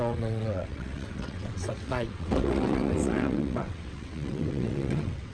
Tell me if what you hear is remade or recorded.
remade